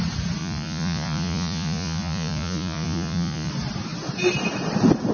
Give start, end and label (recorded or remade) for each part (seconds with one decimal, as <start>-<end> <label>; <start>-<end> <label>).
0.0-0.4 recorded; 0.4-3.5 remade; 3.5-5.1 recorded

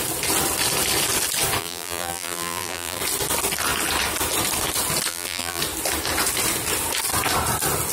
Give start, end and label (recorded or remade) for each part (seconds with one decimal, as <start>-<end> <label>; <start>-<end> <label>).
0.0-1.6 recorded; 1.6-3.0 remade; 3.0-5.1 recorded; 5.1-5.6 remade; 5.6-7.9 recorded